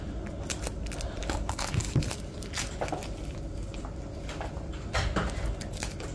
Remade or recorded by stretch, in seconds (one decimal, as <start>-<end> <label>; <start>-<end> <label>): 0.0-1.2 recorded; 1.2-1.9 remade; 1.9-6.1 recorded